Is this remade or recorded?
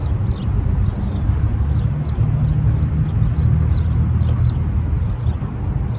recorded